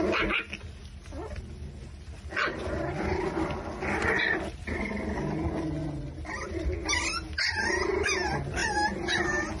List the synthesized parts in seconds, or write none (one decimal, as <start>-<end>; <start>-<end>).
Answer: none